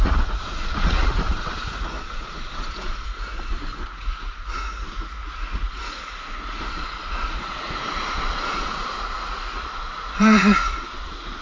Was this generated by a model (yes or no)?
yes